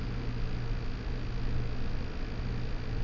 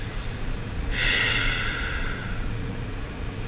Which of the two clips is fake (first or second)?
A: second